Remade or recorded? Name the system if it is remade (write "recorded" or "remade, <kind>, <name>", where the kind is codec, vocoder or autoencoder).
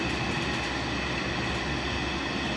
recorded